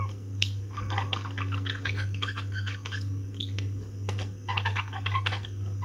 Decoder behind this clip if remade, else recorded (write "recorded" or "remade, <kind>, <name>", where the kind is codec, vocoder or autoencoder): remade, codec, SNAC